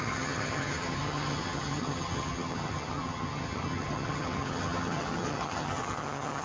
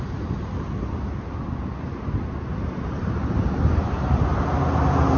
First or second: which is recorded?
second